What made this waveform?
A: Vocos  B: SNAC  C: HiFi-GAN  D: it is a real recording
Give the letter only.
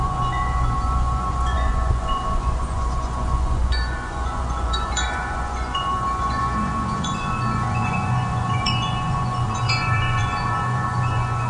A